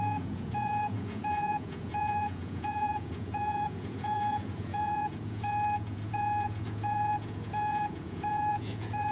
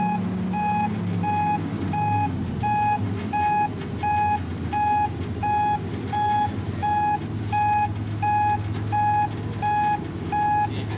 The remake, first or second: first